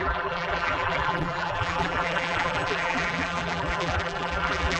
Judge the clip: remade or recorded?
remade